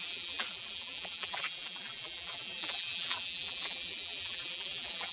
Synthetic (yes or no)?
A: yes